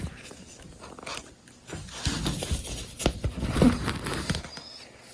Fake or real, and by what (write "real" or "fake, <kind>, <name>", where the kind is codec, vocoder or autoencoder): real